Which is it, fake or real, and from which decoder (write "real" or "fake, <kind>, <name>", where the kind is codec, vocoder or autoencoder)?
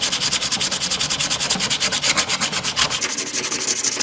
real